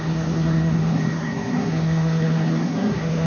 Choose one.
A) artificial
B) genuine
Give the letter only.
A